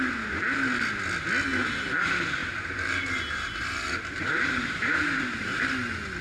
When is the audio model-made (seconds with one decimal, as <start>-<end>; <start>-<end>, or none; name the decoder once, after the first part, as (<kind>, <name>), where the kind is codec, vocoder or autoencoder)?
2.4-5.6 (vocoder, BigVGAN v2)